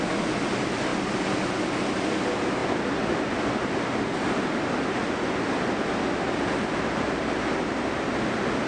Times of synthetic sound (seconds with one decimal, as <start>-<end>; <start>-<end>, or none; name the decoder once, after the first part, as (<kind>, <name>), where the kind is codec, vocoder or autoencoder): 0.9-2.1 (vocoder, BigVGAN v2); 2.6-5.9